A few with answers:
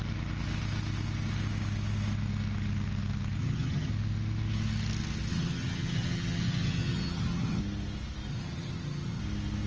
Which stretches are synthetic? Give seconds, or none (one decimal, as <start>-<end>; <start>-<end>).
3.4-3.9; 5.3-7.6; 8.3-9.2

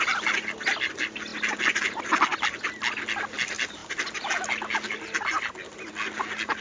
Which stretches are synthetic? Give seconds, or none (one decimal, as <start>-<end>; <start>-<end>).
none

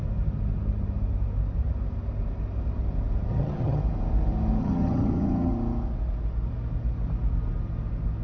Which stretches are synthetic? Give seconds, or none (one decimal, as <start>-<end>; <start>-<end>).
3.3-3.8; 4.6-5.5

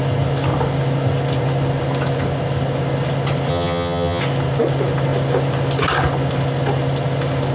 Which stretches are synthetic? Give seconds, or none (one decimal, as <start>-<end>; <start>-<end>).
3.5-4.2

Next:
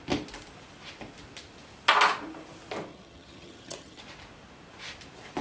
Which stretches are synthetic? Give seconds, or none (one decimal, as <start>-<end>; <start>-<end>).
2.9-4.0